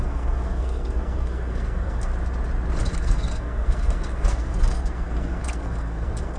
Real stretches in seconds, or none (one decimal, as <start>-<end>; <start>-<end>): 2.1-2.9